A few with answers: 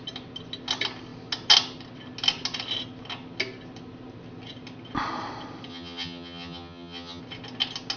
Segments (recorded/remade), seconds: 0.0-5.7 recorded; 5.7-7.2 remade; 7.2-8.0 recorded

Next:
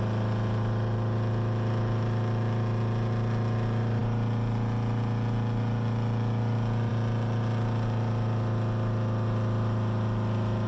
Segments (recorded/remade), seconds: 0.0-10.7 recorded

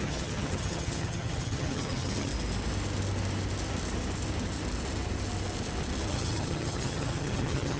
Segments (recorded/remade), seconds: 0.0-2.3 remade; 2.3-6.1 recorded; 6.1-7.8 remade

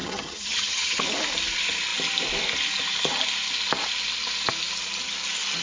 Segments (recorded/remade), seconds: 0.0-1.0 remade; 1.0-5.6 recorded

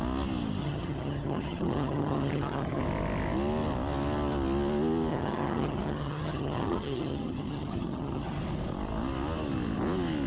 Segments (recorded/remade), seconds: 0.0-0.6 recorded; 0.6-2.8 remade; 2.8-5.1 recorded; 5.1-8.4 remade; 8.4-10.3 recorded